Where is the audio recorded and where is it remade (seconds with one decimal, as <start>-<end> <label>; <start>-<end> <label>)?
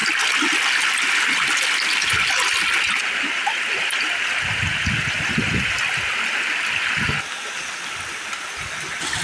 0.0-9.2 recorded